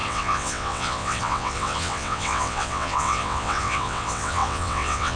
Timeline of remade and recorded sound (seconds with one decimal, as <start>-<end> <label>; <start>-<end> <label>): 0.0-5.2 remade